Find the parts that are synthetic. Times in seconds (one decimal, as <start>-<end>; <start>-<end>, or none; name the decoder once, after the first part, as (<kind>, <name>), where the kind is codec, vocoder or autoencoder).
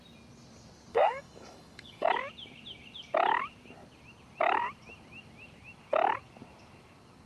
0.9-2.1 (codec, DAC)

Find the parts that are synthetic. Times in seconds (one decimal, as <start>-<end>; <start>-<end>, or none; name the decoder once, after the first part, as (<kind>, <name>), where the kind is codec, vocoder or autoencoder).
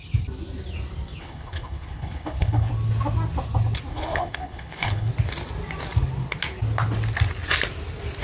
1.2-2.7 (codec, HILCodec); 3.9-5.1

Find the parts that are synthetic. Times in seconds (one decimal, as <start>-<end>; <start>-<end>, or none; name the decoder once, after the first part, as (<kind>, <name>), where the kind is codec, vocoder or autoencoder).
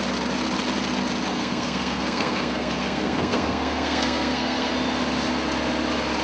1.3-4.7 (codec, SNAC)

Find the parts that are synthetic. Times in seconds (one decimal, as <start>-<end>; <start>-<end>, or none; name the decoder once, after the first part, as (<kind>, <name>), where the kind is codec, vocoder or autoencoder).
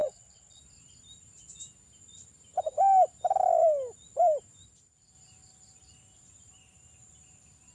0.0-0.6 (vocoder, WaveNeXt)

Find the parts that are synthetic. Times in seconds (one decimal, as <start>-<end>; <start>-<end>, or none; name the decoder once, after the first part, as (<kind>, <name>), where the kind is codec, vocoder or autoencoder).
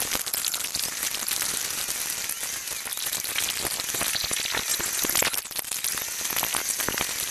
2.9-3.4 (vocoder, BigVGAN v2)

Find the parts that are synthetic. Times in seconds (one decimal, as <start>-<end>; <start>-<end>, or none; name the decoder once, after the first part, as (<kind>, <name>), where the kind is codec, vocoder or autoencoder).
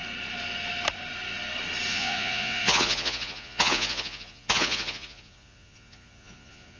1.9-6.8 (vocoder, Vocos)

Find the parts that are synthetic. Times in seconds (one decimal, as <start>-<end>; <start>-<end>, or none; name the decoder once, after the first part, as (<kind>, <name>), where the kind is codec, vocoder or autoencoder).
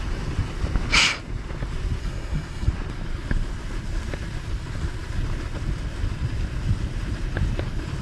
2.0-2.7 (codec, SNAC)